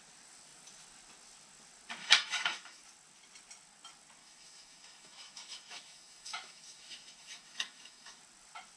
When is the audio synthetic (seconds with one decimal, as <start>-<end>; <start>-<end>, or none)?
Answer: 2.0-2.8; 4.2-8.2